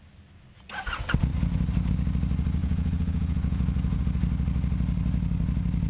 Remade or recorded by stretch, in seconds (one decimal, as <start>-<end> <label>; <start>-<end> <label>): 0.0-2.6 recorded; 2.6-4.0 remade; 4.0-5.9 recorded